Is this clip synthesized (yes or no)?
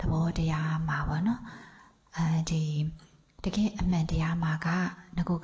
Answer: no